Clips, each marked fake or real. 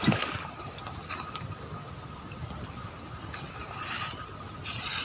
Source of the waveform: real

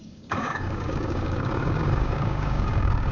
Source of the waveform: fake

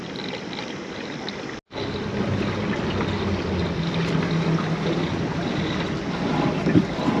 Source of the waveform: real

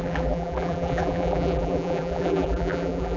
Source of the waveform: fake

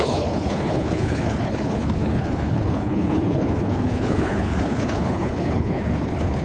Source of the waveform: fake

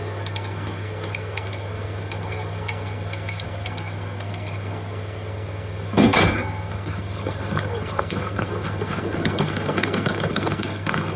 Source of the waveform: fake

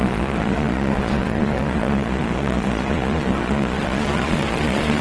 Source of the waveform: fake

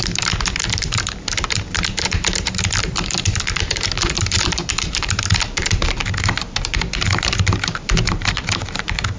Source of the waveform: fake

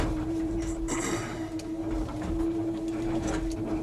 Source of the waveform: fake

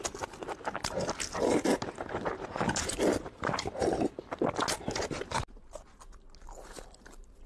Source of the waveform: real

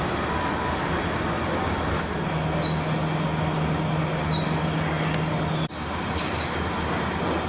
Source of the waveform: real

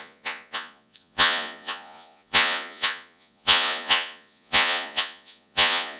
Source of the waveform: fake